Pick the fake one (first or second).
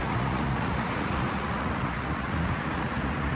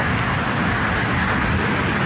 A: first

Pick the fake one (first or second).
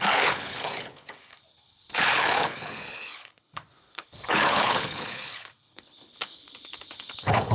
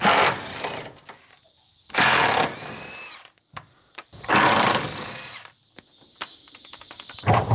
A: first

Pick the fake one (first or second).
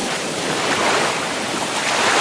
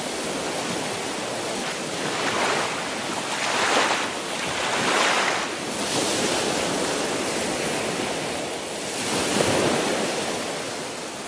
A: first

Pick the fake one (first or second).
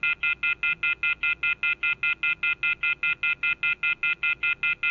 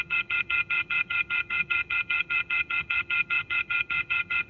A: second